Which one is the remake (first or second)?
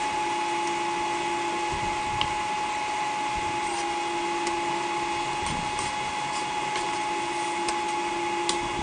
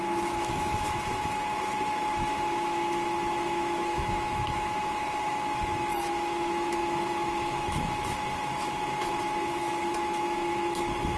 second